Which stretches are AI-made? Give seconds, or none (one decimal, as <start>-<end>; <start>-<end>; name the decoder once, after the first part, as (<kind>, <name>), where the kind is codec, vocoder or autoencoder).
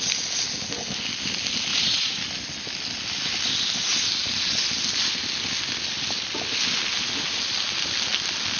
1.7-2.2 (vocoder, Vocos)